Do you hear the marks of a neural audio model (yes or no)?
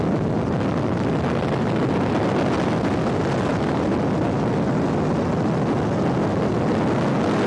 no